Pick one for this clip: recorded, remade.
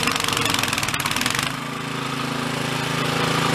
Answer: recorded